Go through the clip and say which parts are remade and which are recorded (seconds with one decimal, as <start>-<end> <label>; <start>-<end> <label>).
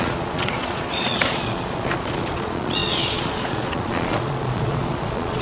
0.0-5.4 remade